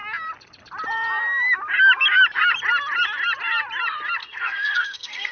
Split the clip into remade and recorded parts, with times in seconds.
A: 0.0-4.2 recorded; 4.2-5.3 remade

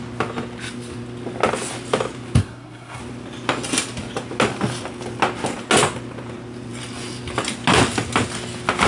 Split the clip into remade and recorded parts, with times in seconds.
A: 0.0-2.4 recorded; 2.4-3.0 remade; 3.0-8.9 recorded